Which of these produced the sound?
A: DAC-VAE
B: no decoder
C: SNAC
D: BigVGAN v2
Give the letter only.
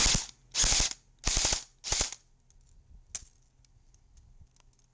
B